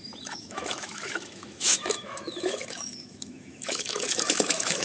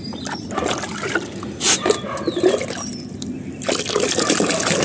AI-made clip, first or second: first